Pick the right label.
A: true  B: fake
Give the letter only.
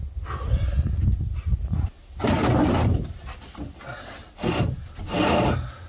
A